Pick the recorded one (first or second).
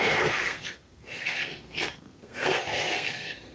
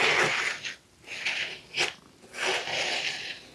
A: second